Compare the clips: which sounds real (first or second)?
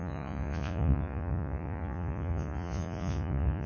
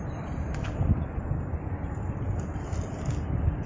second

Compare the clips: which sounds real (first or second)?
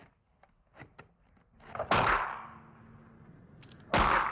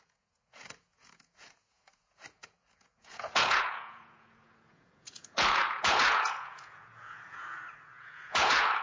first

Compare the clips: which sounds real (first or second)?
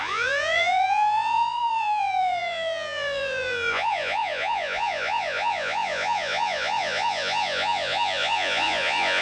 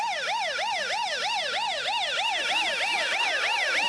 second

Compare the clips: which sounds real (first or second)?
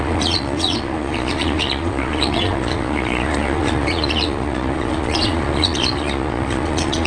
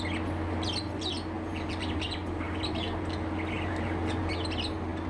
second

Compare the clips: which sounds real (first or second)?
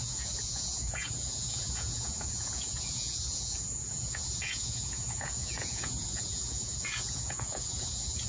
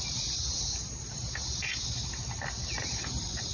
second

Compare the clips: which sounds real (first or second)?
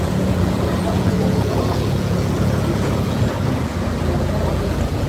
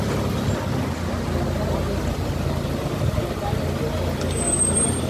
second